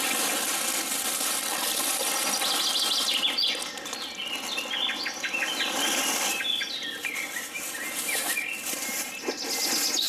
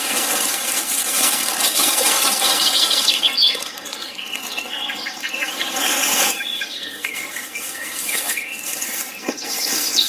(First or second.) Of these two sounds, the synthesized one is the second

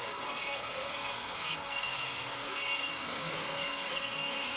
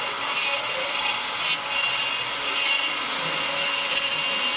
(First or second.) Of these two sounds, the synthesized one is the first